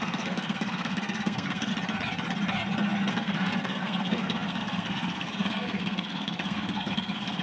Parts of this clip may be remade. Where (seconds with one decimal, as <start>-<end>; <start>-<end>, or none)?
0.0-1.7; 3.1-7.4